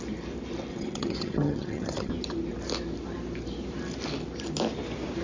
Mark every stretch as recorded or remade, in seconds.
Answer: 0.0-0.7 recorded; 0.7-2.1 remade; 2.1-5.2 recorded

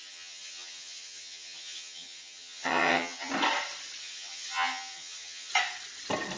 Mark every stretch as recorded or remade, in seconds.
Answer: 0.0-3.3 remade; 3.3-4.0 recorded; 4.0-5.5 remade; 5.5-6.4 recorded

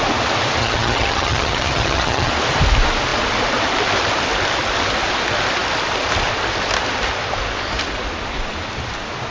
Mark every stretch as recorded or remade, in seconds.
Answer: 0.0-0.6 recorded; 0.6-2.3 remade; 2.3-9.3 recorded